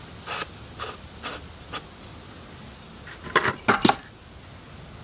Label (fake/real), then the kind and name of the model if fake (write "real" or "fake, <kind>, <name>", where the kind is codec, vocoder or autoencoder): real